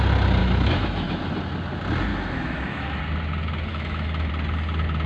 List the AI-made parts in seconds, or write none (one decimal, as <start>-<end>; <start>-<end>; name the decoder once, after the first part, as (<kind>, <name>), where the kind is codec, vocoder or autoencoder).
0.4-1.2 (autoencoder, DAC-VAE); 2.1-3.0; 3.7-4.3